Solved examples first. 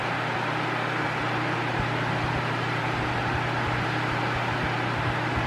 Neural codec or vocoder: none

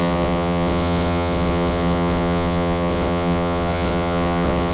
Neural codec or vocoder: vocoder, WaveNeXt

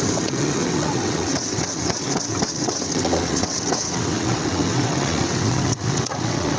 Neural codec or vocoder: vocoder, WaveNeXt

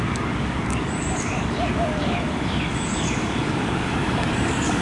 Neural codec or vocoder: codec, DAC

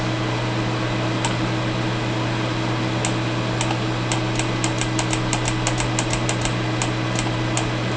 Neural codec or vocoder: none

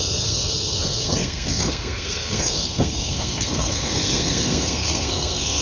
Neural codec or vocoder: codec, SNAC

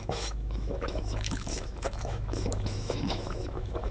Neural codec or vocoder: autoencoder, DAC-VAE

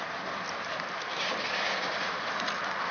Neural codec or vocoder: vocoder, BigVGAN v2